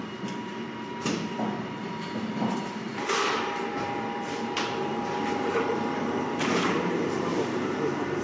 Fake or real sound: fake